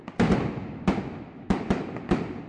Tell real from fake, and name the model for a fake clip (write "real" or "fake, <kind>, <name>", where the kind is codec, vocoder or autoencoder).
real